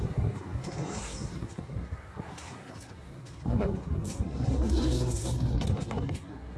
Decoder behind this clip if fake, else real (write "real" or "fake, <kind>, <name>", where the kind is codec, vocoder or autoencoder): fake, codec, SNAC